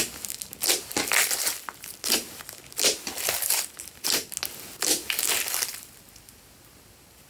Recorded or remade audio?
recorded